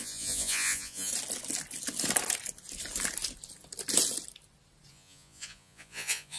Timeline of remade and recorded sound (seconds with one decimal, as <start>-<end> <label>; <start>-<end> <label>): 0.0-1.1 remade; 1.1-4.9 recorded; 4.9-6.4 remade